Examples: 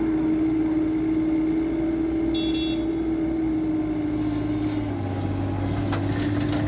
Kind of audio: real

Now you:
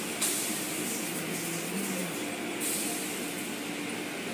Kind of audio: real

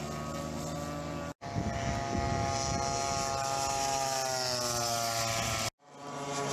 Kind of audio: real